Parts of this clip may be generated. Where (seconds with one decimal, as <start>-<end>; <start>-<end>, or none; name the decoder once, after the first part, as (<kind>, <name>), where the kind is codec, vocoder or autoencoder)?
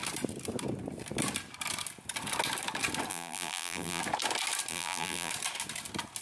3.1-4.0 (vocoder, BigVGAN v2); 4.7-5.3